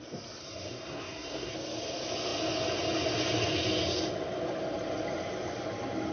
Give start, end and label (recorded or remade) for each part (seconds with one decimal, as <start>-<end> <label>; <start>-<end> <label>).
0.0-0.4 recorded; 0.4-1.5 remade; 1.5-6.1 recorded